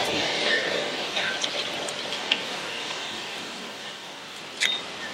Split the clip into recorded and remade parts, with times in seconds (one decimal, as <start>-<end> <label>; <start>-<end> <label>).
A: 0.0-1.3 remade; 1.3-2.1 recorded; 2.1-4.4 remade; 4.4-5.1 recorded